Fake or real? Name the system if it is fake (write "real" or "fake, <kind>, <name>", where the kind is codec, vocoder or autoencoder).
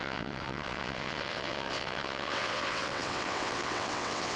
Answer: fake, vocoder, WaveNeXt